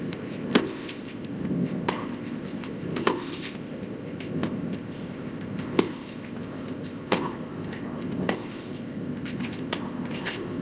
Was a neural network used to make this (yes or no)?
yes